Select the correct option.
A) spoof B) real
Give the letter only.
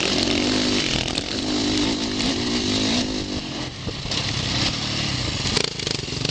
B